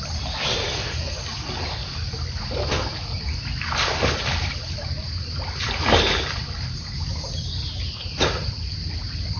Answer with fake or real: real